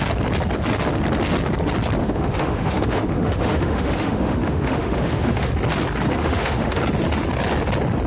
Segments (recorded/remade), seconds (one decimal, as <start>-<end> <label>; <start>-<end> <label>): 0.0-2.0 recorded; 2.0-5.5 remade; 5.5-6.2 recorded; 6.2-6.8 remade; 6.8-8.1 recorded